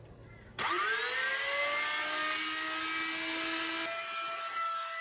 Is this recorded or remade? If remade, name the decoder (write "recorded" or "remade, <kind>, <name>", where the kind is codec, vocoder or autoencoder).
recorded